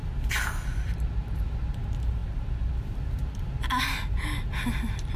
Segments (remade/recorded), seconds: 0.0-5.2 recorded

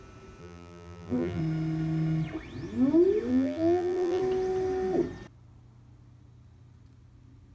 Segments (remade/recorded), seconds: 0.0-0.4 recorded; 0.4-1.4 remade; 1.4-3.3 recorded; 3.3-4.2 remade; 4.2-7.5 recorded

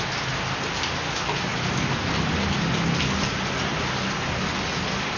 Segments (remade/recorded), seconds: 0.0-5.2 recorded

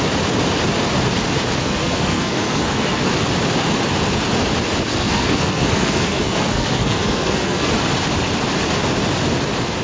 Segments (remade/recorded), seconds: 0.0-1.6 recorded; 1.6-3.0 remade; 3.0-4.9 recorded; 4.9-7.7 remade; 7.7-9.8 recorded

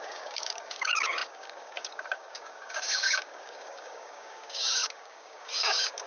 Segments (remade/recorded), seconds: 0.0-6.1 remade

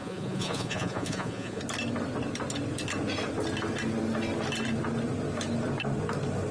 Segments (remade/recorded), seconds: 0.0-1.6 remade; 1.6-6.5 recorded